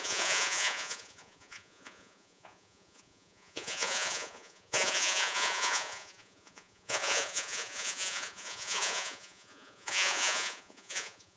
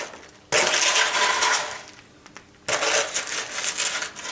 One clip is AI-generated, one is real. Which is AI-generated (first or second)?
first